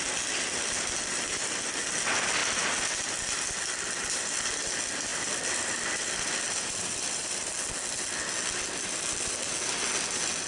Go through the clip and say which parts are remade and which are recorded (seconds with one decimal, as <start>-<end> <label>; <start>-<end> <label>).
0.0-5.1 recorded; 5.1-7.5 remade; 7.5-10.5 recorded